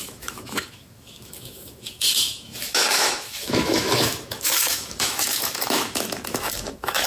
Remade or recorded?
remade